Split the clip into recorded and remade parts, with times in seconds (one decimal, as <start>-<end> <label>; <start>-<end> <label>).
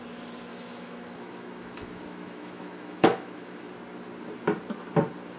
0.0-0.5 recorded; 0.5-3.7 remade; 3.7-5.4 recorded